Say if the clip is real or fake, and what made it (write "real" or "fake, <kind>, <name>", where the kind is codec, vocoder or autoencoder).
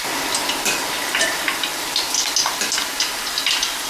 real